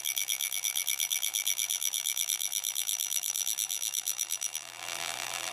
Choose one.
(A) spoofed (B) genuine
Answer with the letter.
A